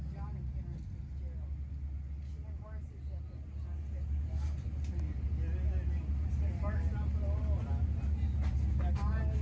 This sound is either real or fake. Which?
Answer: real